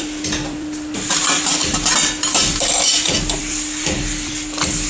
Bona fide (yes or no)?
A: no